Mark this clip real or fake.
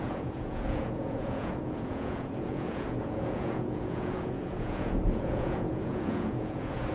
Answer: fake